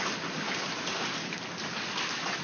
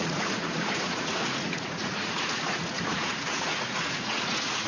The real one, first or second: first